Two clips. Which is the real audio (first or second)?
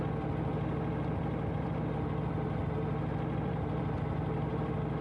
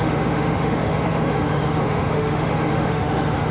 first